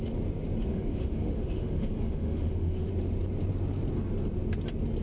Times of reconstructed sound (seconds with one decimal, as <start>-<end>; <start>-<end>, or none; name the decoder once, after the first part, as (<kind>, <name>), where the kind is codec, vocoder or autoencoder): 0.7-2.9 (autoencoder, DAC-VAE)